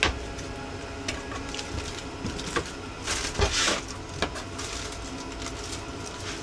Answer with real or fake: real